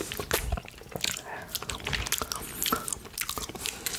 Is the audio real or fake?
real